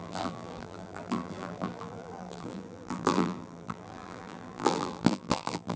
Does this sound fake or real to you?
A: fake